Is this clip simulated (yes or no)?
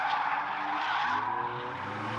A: no